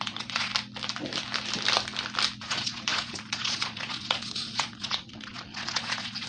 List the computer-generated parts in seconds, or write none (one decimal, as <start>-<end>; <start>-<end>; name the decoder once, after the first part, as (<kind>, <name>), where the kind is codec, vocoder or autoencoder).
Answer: 0.0-0.5 (vocoder, Vocos); 2.4-6.3